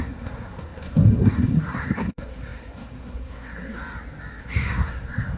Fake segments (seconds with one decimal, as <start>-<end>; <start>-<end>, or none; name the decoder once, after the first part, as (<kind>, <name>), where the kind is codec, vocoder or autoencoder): 0.0-3.8 (codec, SNAC); 4.4-5.4